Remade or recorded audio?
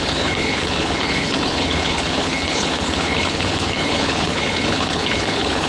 remade